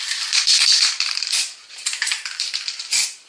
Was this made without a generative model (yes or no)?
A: no